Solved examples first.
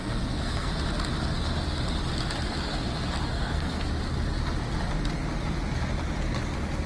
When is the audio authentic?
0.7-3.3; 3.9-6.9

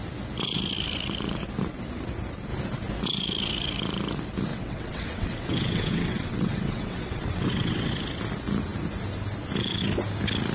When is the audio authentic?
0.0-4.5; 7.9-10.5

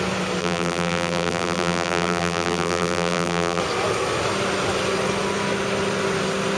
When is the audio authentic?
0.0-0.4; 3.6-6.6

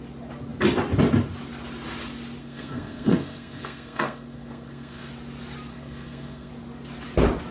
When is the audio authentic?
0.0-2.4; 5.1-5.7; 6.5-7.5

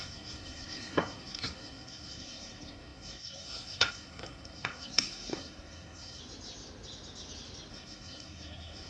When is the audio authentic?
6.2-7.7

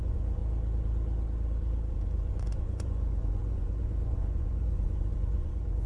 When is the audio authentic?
0.4-1.9

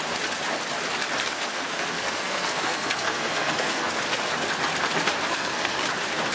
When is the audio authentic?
0.0-1.3; 4.0-5.3; 5.8-6.3